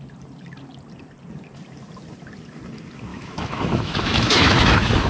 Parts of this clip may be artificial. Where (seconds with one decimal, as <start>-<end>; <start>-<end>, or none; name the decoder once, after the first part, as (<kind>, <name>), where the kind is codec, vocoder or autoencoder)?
3.1-5.1 (autoencoder, DAC-VAE)